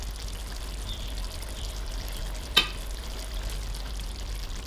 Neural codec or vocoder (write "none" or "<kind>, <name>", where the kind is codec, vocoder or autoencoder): none